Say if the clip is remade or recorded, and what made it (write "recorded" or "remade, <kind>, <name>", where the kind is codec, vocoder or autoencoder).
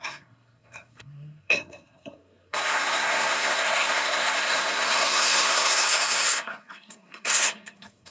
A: remade, codec, SNAC